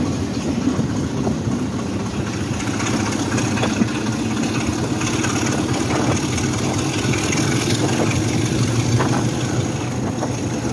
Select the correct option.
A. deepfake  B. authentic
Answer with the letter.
B